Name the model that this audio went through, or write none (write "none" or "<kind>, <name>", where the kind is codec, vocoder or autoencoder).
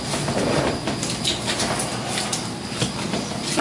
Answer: none